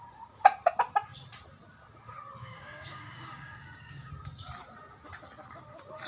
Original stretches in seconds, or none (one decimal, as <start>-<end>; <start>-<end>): 0.0-2.4; 4.1-6.1